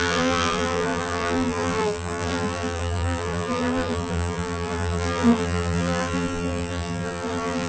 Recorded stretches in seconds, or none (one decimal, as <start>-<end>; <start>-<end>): none